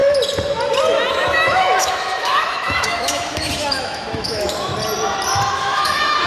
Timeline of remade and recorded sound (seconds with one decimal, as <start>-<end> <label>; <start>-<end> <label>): 0.0-1.1 recorded; 1.1-4.7 remade; 4.7-5.6 recorded; 5.6-6.3 remade